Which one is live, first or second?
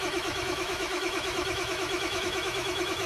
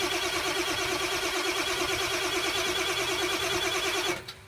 second